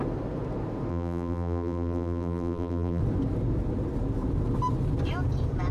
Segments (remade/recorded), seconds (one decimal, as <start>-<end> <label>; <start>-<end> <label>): 0.0-0.9 recorded; 0.9-3.0 remade; 3.0-5.7 recorded

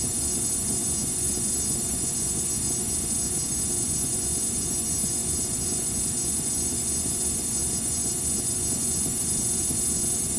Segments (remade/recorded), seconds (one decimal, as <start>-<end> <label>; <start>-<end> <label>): 0.0-10.4 remade

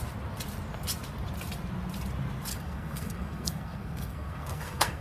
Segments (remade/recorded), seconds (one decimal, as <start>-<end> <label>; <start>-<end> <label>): 0.0-2.5 recorded; 2.5-5.0 remade

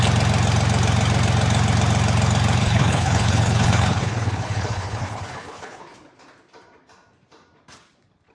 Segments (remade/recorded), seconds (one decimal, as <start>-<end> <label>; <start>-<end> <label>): 0.0-2.6 recorded; 2.6-5.8 remade; 5.8-8.3 recorded

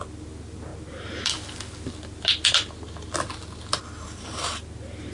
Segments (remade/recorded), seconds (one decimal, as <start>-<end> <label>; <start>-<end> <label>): 0.0-5.1 recorded

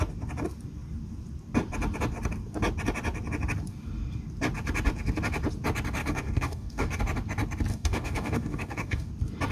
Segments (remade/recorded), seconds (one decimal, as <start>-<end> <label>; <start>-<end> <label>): 0.0-6.0 recorded; 6.0-7.0 remade; 7.0-7.7 recorded; 7.7-9.1 remade; 9.1-9.5 recorded